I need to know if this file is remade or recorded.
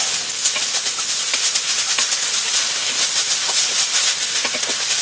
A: recorded